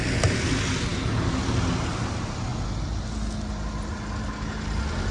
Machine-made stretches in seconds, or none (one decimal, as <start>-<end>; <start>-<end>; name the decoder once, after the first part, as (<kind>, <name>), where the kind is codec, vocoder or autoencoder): none